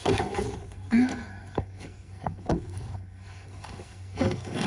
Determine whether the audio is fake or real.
fake